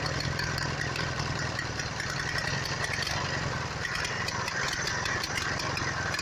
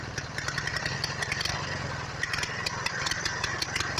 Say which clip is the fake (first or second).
first